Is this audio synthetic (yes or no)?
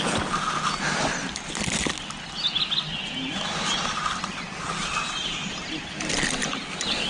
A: no